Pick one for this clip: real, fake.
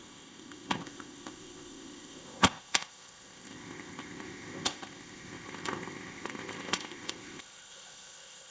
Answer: fake